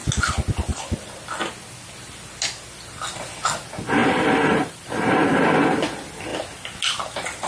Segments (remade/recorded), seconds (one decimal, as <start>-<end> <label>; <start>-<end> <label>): 0.0-4.0 recorded; 4.0-5.2 remade; 5.2-7.5 recorded